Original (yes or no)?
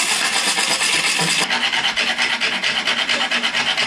yes